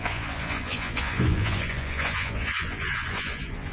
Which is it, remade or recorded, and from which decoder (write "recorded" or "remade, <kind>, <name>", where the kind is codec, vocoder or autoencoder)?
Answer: remade, vocoder, Vocos